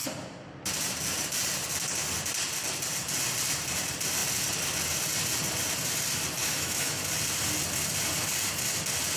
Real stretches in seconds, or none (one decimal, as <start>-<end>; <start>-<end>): 0.0-6.4; 7.0-9.2